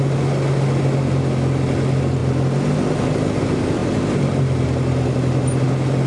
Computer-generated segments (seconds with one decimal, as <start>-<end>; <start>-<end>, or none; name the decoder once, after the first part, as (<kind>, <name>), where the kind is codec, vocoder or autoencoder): none